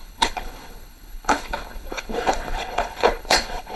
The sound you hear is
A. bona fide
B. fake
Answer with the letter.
B